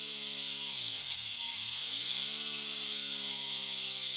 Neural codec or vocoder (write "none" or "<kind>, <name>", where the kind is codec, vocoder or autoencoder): codec, SNAC